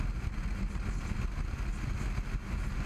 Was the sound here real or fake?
real